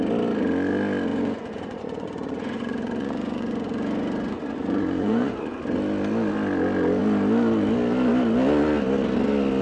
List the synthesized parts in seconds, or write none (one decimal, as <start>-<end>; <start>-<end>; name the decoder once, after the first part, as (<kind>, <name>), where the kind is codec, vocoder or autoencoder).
1.1-5.6 (vocoder, Vocos)